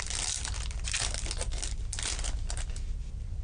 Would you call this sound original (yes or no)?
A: yes